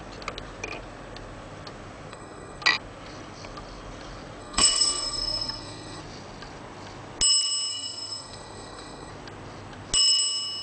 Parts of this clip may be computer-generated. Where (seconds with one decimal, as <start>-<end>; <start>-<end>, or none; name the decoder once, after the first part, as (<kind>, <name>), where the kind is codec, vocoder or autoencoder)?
2.1-2.6 (codec, SNAC); 4.4-6.0; 7.7-9.1